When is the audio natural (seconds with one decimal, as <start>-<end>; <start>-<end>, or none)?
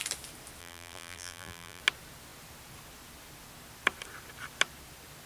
0.0-0.6; 1.8-5.3